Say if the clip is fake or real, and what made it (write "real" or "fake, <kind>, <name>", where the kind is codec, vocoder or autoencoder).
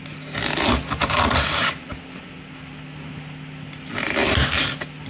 real